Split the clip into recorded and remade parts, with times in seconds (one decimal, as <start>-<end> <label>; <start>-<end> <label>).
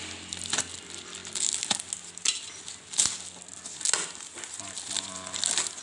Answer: 0.0-5.8 recorded